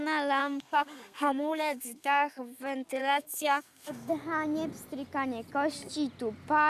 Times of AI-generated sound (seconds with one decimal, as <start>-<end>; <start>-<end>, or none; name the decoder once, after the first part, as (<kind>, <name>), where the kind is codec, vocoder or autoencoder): 0.4-2.6 (codec, SNAC); 3.0-4.1